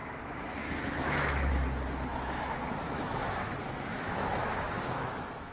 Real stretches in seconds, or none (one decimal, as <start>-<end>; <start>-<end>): 1.5-2.1